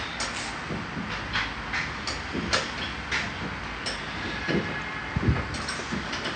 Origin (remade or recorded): recorded